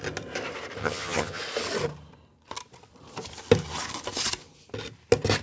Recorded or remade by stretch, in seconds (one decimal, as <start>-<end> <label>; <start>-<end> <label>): 0.0-0.8 recorded; 0.8-1.4 remade; 1.4-5.4 recorded